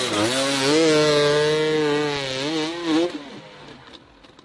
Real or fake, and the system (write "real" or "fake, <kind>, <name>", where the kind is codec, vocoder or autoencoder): real